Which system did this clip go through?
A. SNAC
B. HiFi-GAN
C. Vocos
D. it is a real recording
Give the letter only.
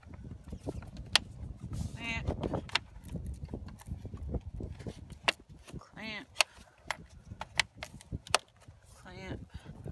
D